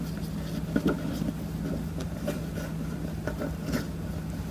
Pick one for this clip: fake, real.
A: real